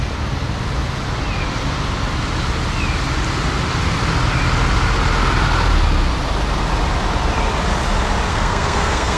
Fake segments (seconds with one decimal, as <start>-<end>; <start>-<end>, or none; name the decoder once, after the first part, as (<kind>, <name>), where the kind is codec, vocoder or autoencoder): 8.3-9.2 (codec, SNAC)